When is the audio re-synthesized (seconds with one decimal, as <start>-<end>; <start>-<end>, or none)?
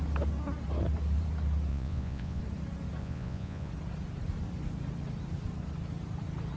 1.7-2.4; 3.0-3.7